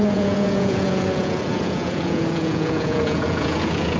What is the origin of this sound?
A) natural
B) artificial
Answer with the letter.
B